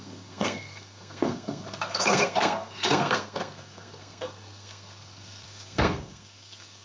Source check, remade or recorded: remade